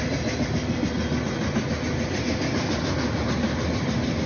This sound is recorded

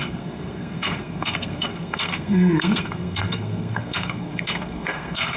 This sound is remade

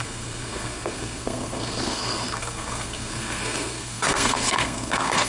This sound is remade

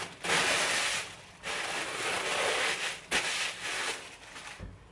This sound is recorded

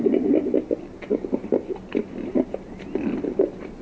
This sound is recorded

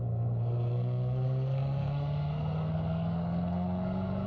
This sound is remade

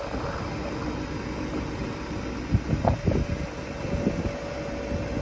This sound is recorded